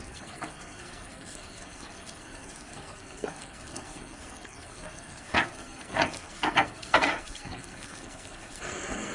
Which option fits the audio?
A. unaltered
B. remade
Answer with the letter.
B